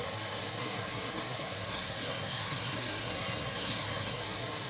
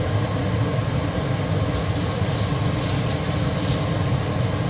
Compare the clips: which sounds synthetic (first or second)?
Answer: first